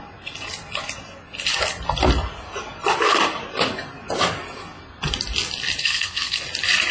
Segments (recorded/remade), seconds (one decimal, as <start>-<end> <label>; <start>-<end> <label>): 0.0-5.8 recorded; 5.8-6.4 remade; 6.4-6.9 recorded